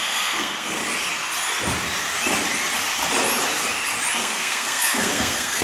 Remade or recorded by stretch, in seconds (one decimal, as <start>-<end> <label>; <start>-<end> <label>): 0.0-0.8 remade; 0.8-4.2 recorded; 4.2-5.6 remade